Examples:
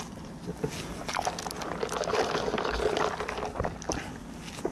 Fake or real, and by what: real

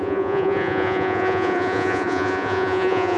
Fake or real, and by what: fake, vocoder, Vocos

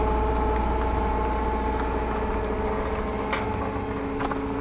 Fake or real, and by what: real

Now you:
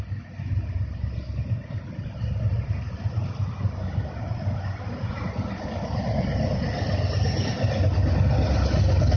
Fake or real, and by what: real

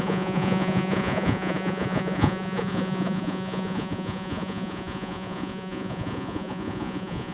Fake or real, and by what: fake, vocoder, Vocos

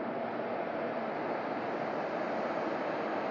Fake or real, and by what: real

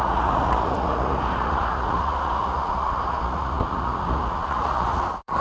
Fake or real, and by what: fake, vocoder, Vocos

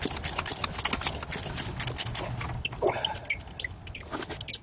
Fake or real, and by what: real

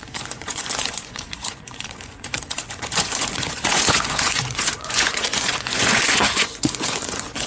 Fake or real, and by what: fake, vocoder, Vocos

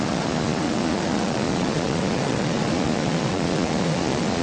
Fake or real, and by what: fake, vocoder, Vocos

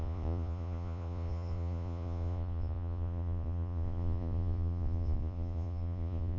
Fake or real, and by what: fake, vocoder, Vocos